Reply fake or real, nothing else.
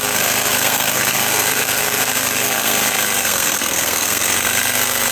fake